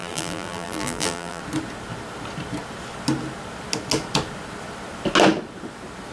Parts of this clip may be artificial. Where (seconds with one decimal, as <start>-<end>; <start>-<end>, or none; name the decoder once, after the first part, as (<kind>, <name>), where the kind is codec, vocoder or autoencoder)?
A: 0.0-1.4 (vocoder, BigVGAN v2)